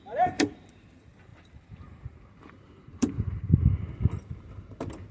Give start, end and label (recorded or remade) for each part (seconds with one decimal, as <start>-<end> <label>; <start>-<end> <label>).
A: 0.0-5.1 remade